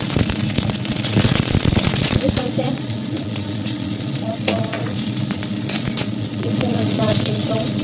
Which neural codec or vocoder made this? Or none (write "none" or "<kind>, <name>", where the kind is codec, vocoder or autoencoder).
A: vocoder, Vocos